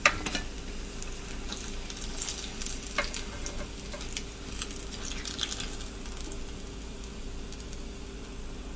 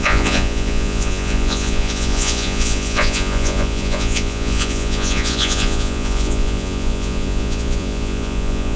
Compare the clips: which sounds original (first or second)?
first